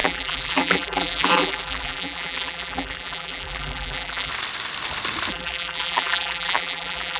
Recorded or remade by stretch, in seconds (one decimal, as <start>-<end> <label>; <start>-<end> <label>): 0.0-4.3 remade; 4.3-5.3 recorded; 5.3-7.2 remade